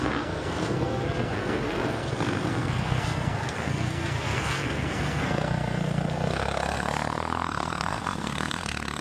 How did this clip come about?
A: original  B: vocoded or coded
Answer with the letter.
B